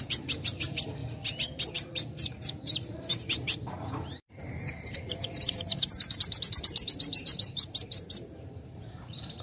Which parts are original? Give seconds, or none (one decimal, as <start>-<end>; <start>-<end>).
1.0-1.7